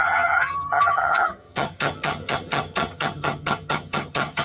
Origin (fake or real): fake